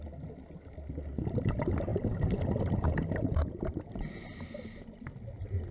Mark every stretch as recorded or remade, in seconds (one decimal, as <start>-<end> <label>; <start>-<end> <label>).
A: 0.0-5.7 recorded